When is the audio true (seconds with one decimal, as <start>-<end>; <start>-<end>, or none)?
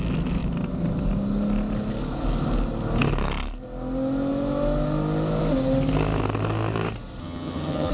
0.0-7.2